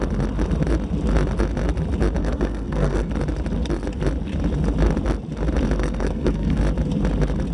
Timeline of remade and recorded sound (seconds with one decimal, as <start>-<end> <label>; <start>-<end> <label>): 0.0-2.2 recorded; 2.2-3.1 remade; 3.1-5.8 recorded; 5.8-6.6 remade; 6.6-7.5 recorded